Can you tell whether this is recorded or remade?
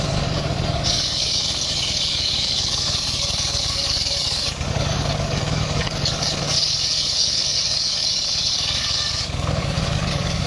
remade